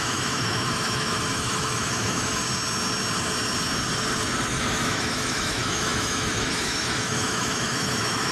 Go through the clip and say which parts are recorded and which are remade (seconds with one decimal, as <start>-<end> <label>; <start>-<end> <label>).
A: 0.0-2.4 remade; 2.4-4.5 recorded; 4.5-8.3 remade